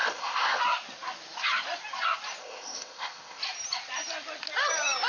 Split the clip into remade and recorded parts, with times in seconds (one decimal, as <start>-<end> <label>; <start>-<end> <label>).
0.0-0.6 remade; 0.6-2.4 recorded; 2.4-3.4 remade; 3.4-5.1 recorded